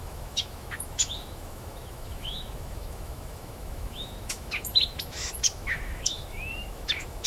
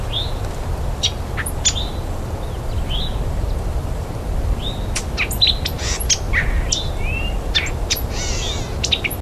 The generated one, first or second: first